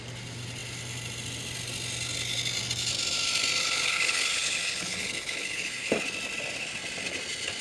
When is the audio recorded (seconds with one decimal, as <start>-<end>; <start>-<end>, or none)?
0.0-3.6; 5.9-7.6